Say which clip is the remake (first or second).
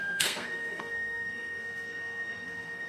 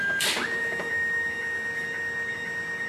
first